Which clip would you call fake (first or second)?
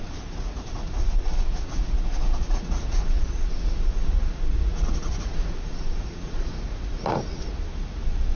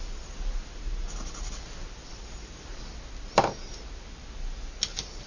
first